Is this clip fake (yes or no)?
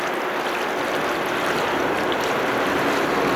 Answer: no